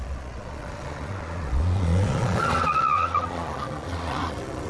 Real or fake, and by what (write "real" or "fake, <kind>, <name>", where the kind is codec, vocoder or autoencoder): fake, vocoder, Vocos